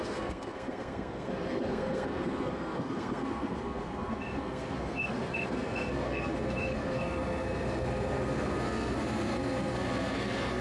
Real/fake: fake